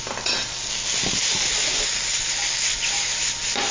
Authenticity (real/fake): real